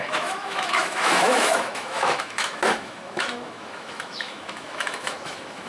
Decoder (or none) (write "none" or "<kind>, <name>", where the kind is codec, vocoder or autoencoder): autoencoder, DAC-VAE